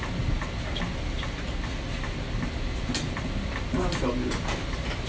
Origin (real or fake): real